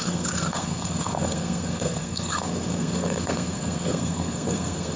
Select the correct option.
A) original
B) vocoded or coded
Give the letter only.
B